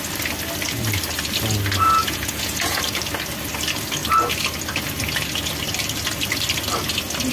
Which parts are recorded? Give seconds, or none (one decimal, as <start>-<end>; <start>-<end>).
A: 0.0-2.0; 2.8-7.3